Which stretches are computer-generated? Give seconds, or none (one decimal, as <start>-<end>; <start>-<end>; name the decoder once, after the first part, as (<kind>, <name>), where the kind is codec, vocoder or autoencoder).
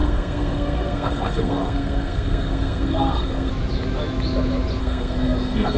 0.0-3.5 (codec, SNAC); 4.8-5.8